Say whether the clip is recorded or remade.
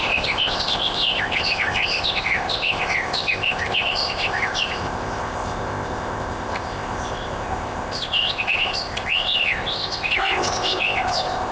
remade